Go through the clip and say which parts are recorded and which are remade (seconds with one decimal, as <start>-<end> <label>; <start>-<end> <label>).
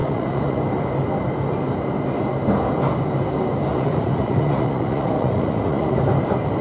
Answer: 0.0-0.6 remade; 0.6-3.7 recorded; 3.7-6.0 remade; 6.0-6.6 recorded